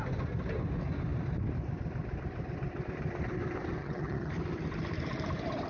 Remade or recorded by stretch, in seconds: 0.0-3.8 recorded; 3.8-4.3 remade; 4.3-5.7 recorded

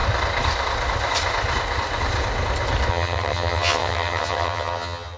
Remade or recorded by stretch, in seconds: 0.0-2.9 recorded; 2.9-5.2 remade

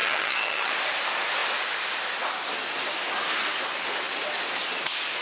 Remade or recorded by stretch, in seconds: 0.0-0.7 remade; 0.7-5.2 recorded

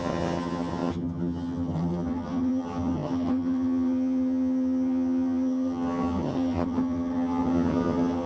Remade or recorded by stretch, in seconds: 0.0-8.3 remade